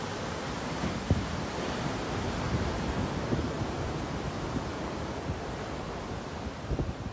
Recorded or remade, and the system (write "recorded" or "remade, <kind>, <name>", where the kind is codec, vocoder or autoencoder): remade, vocoder, BigVGAN v2